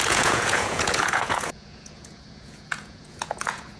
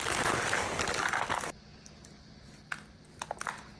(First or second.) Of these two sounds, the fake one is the first